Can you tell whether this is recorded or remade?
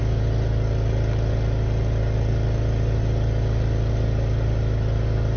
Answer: recorded